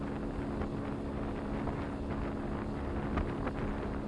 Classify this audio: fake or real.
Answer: real